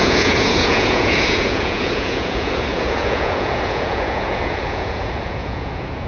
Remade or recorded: remade